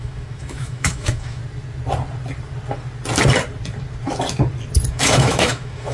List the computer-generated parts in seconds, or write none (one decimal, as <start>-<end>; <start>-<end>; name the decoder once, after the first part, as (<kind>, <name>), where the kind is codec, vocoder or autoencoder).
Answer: 0.0-1.4 (autoencoder, DAC-VAE); 4.9-5.9